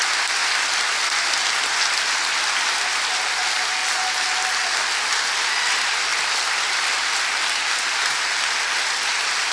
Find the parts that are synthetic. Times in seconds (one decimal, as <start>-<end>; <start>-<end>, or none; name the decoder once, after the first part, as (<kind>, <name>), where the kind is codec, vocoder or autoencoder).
none

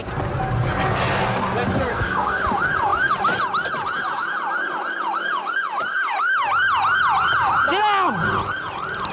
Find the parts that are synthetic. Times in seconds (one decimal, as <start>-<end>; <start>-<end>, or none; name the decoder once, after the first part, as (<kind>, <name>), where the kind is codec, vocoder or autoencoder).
1.9-2.4 (codec, SNAC)